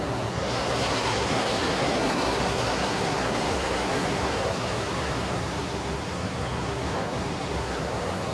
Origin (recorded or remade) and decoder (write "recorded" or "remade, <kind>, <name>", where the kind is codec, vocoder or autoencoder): remade, codec, SNAC